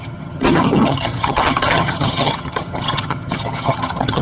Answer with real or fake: fake